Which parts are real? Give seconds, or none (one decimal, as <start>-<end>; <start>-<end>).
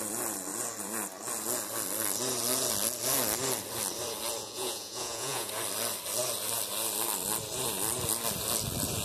0.0-4.4; 5.5-9.0